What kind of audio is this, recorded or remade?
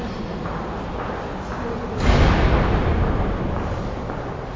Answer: recorded